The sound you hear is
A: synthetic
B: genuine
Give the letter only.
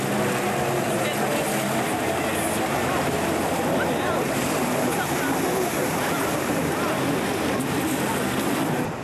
B